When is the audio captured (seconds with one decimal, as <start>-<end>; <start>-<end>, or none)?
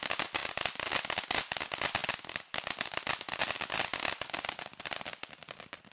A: 0.0-5.9